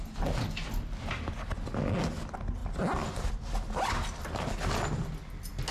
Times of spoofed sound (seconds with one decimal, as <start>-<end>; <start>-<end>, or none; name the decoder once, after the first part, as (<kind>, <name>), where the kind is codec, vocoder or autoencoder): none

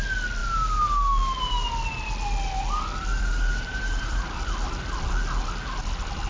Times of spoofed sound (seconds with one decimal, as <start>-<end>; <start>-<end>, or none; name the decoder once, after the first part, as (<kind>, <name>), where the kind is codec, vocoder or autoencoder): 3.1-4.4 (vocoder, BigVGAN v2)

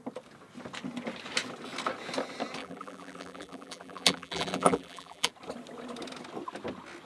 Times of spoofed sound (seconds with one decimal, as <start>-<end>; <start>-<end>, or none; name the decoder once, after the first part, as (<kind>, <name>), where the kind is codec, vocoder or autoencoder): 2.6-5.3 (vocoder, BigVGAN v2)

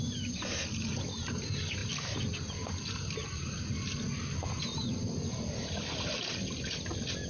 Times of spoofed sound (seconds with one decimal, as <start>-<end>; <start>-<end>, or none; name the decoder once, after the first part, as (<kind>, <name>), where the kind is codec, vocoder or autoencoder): none

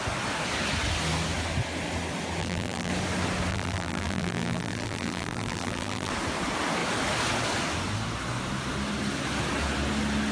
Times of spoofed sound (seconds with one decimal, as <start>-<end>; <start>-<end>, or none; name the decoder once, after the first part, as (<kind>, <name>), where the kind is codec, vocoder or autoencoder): 2.4-2.9 (vocoder, BigVGAN v2); 3.5-6.1

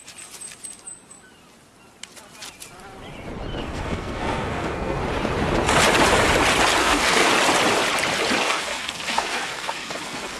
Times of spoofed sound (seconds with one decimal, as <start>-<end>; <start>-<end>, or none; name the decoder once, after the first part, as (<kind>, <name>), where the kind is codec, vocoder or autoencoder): 3.6-5.0 (codec, SNAC); 6.8-7.3; 8.4-10.4

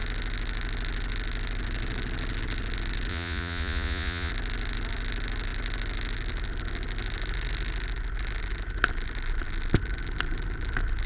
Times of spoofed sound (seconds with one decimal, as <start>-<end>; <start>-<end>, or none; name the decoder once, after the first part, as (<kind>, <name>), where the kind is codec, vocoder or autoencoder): 3.1-4.3 (vocoder, Vocos)